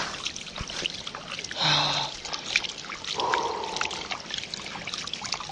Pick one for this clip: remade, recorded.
recorded